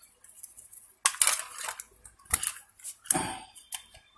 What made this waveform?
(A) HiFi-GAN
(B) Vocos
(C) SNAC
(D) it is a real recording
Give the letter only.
D